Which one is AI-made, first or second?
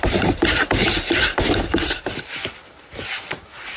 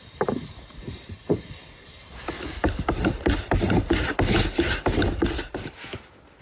first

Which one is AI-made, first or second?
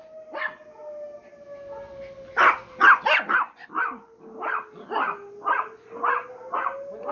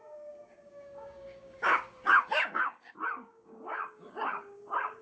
second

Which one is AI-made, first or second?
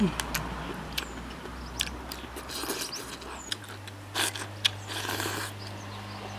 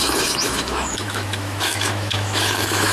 second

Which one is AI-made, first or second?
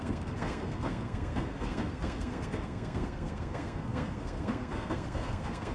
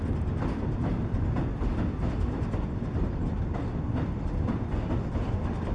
first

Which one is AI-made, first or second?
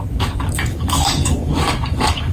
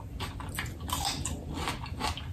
first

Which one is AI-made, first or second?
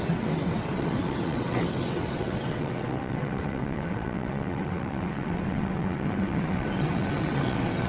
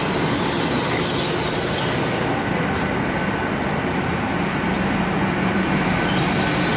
first